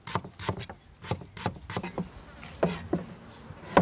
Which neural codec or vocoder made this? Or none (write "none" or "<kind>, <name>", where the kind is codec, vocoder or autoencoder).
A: none